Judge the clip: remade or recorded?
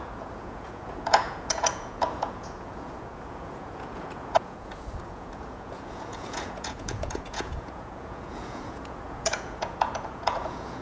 remade